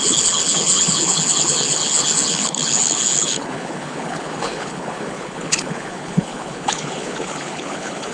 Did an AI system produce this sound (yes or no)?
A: yes